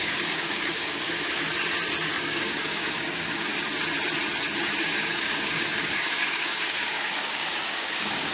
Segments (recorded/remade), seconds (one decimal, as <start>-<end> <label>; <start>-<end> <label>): 0.0-1.5 remade; 1.5-2.2 recorded; 2.2-3.5 remade; 3.5-4.8 recorded; 4.8-8.3 remade